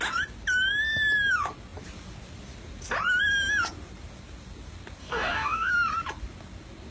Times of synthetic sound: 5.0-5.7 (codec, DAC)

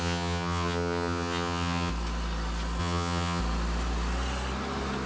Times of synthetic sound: 0.0-1.9 (vocoder, HiFi-GAN); 2.8-3.4